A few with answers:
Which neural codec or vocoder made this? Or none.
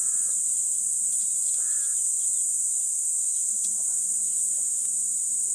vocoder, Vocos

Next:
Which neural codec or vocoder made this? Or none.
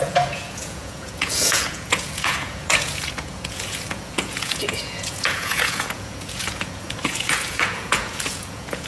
vocoder, Vocos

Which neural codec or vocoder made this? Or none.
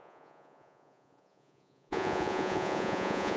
vocoder, Vocos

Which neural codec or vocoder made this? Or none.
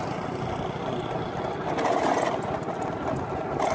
none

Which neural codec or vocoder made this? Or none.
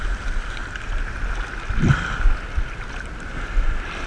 none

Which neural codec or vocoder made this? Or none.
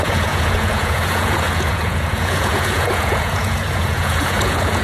vocoder, Vocos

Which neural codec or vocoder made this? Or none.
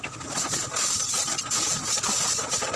none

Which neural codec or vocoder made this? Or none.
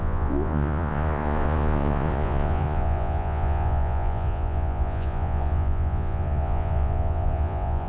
vocoder, Vocos